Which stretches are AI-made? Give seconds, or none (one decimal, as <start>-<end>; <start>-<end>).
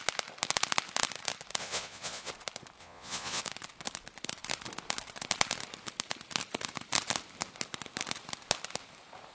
1.6-2.3; 2.8-3.4